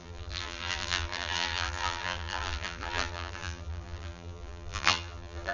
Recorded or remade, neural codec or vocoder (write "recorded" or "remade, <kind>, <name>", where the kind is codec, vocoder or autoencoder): remade, vocoder, BigVGAN v2